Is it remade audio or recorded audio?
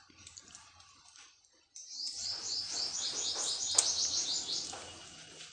recorded